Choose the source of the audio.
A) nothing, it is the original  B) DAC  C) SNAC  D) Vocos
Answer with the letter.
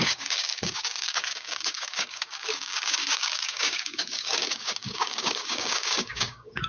B